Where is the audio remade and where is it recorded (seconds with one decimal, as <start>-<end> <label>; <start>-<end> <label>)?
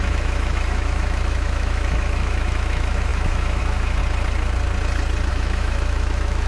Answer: 0.0-4.0 remade; 4.0-5.3 recorded; 5.3-6.5 remade